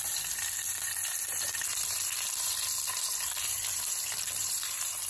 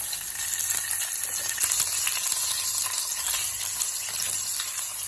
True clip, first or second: second